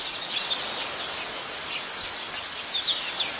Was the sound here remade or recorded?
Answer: recorded